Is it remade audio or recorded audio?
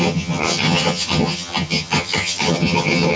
remade